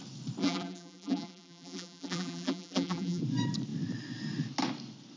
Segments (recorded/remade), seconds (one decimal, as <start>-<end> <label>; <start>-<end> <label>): 0.0-0.4 recorded; 0.4-3.2 remade; 3.2-5.2 recorded